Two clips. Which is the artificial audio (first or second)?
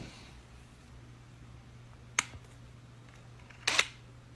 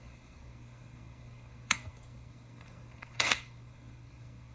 second